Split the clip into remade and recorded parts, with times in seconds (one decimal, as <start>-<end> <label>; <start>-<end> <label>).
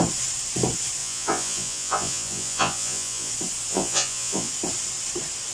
0.0-1.0 recorded; 1.0-3.3 remade; 3.3-3.7 recorded; 3.7-4.5 remade; 4.5-5.5 recorded